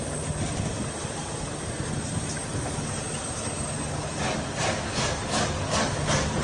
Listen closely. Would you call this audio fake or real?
real